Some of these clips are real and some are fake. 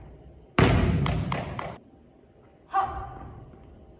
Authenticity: real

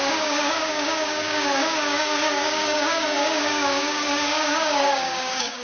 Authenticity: fake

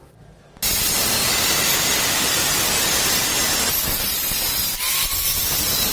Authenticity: real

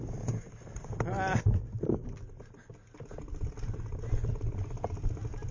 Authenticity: real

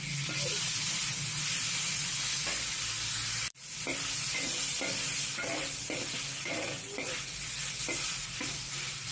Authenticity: real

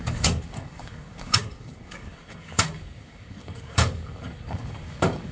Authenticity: fake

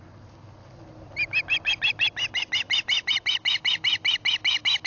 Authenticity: real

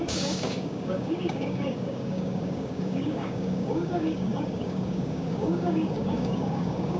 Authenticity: fake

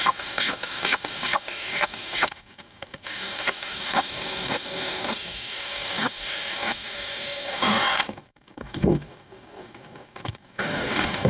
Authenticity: fake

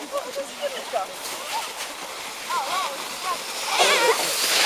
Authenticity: real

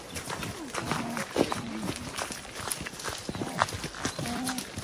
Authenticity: real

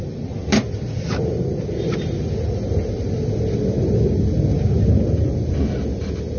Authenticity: real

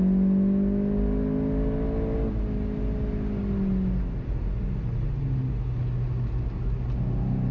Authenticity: real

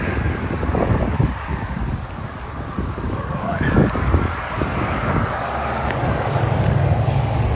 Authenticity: fake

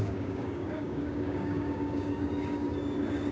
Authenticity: fake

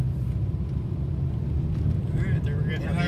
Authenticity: real